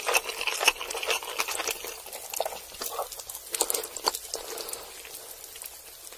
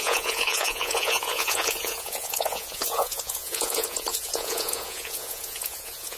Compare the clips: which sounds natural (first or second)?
first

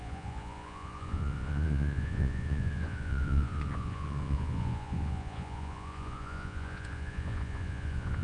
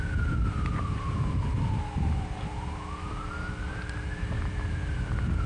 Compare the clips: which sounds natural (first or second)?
second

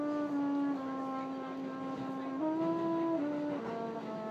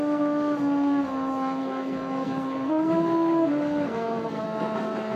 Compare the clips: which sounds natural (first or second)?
first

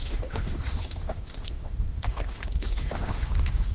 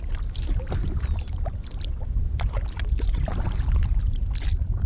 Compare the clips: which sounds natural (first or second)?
second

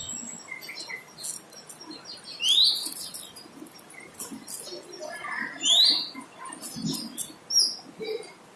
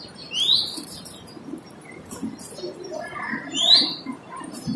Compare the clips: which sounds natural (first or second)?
first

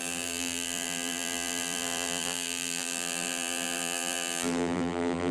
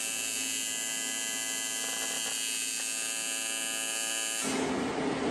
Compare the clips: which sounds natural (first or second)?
second